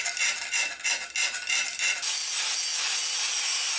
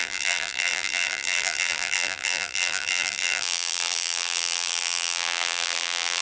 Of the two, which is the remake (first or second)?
second